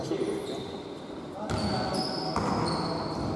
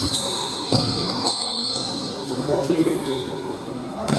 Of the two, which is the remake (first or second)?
second